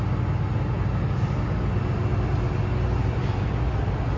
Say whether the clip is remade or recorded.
recorded